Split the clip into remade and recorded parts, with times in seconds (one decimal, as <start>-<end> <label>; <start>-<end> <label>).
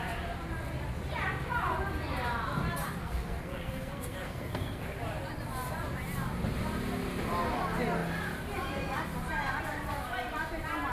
0.0-3.0 recorded; 3.0-5.0 remade; 5.0-10.9 recorded